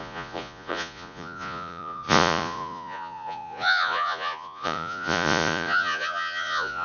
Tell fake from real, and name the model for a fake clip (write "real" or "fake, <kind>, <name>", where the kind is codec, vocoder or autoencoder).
fake, vocoder, Vocos